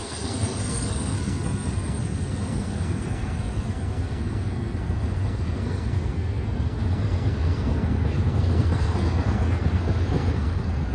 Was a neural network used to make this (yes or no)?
yes